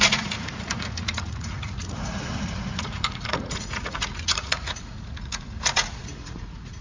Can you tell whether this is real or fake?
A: fake